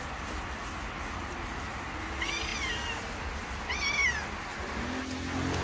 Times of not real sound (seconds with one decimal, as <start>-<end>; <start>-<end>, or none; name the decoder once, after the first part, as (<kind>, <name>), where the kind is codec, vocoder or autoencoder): none